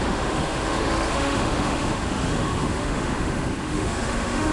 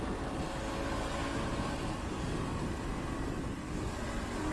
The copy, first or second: first